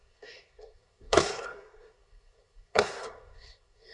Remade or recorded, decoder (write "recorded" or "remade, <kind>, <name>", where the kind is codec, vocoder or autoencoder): remade, codec, SNAC